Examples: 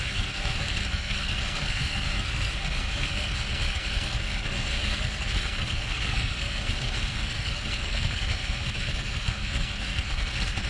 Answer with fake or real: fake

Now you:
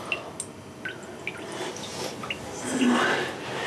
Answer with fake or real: real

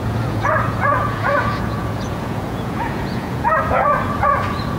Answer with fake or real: fake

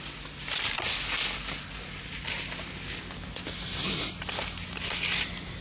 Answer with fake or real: real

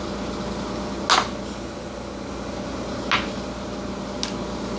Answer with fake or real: real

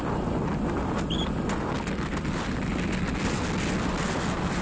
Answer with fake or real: real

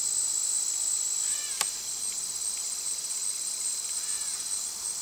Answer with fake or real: real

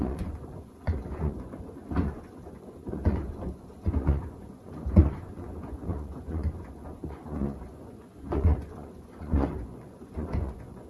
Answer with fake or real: fake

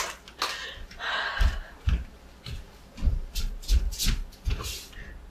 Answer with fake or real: real